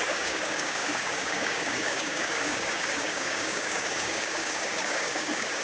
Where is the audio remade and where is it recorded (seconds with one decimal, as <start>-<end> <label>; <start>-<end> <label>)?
0.0-5.6 remade

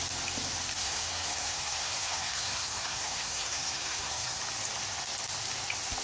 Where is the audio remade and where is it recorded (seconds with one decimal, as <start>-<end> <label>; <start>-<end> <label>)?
0.0-0.8 recorded; 0.8-4.4 remade; 4.4-6.0 recorded